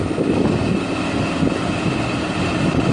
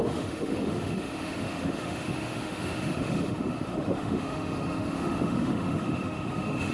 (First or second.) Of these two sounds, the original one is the first